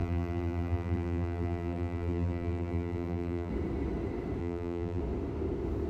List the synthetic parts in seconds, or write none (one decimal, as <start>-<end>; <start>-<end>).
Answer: 0.0-3.5; 4.4-5.0